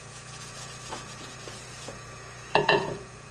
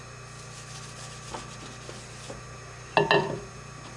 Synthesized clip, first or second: first